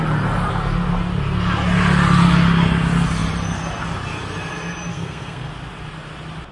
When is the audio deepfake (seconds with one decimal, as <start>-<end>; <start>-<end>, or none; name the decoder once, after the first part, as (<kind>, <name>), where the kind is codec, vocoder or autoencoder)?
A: 4.9-5.5 (codec, SNAC)